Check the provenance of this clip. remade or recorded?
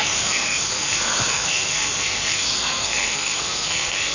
remade